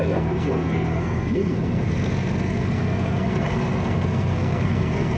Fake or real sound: fake